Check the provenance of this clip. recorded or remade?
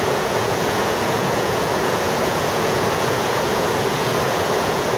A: remade